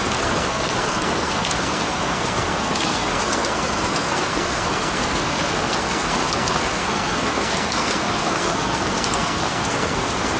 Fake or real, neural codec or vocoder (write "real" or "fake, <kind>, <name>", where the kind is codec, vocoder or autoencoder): fake, codec, SNAC